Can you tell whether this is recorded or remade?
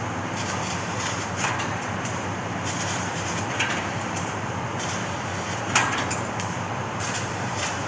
remade